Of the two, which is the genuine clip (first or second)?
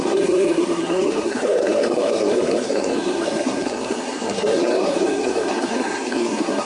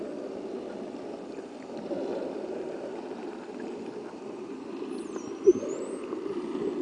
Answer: second